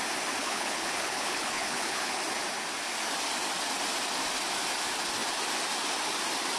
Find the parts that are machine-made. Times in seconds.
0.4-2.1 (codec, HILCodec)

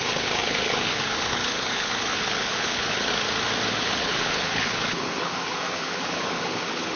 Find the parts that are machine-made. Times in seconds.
0.0-3.1 (codec, HILCodec); 3.7-7.0

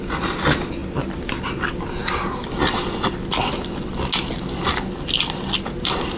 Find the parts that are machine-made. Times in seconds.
none

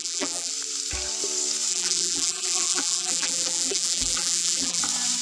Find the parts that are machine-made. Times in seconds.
0.0-0.5 (vocoder, BigVGAN v2); 1.7-4.8

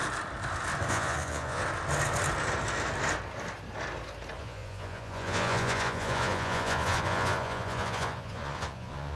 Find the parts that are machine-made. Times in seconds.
0.9-1.6 (vocoder, Vocos); 4.4-9.2

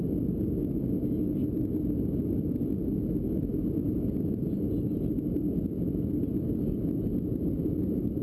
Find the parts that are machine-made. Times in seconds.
none

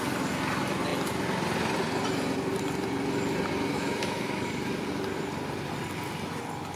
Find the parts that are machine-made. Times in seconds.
3.7-4.5 (autoencoder, DAC-VAE)